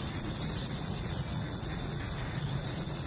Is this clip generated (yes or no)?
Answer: yes